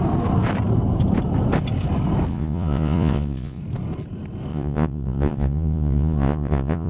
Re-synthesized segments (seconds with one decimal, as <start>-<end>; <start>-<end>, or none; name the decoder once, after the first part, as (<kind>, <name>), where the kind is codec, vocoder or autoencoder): 2.3-3.6 (vocoder, Vocos); 4.5-6.9